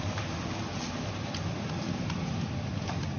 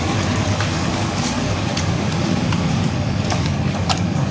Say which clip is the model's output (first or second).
second